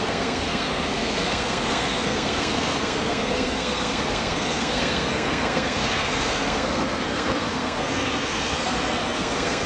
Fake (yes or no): yes